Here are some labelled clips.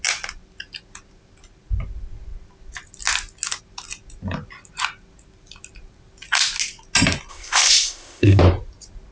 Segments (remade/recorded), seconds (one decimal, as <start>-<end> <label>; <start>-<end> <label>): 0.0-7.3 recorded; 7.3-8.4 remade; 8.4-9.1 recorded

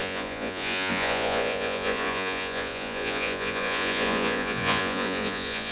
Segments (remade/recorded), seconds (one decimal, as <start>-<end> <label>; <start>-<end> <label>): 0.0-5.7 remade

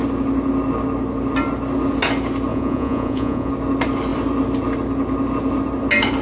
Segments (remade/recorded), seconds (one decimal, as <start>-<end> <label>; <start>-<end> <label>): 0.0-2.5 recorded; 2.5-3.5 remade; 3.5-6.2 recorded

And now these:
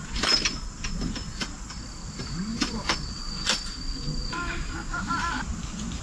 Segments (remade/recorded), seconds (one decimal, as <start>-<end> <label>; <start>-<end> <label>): 0.0-2.5 recorded; 2.5-3.2 remade; 3.2-4.9 recorded; 4.9-6.0 remade

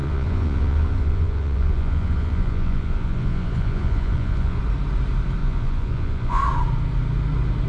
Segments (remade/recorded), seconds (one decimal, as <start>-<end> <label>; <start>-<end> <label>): 0.0-4.6 remade; 4.6-5.4 recorded; 5.4-6.4 remade; 6.4-7.7 recorded